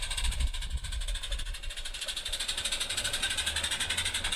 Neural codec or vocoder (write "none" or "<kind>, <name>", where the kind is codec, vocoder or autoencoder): none